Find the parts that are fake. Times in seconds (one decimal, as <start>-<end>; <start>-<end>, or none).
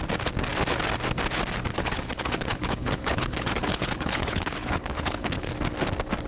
1.7-5.5